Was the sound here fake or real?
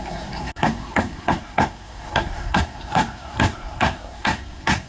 fake